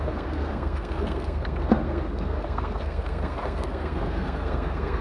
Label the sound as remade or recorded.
remade